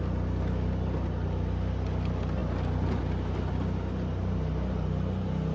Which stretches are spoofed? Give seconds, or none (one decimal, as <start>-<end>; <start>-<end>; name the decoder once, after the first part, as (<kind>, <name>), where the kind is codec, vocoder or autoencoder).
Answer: none